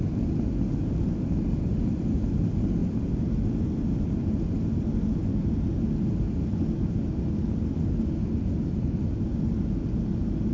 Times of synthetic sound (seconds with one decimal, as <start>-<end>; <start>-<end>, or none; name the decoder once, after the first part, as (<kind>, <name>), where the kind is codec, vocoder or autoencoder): none